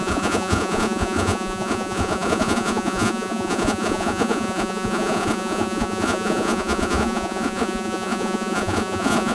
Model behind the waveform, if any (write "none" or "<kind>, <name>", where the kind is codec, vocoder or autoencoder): vocoder, Vocos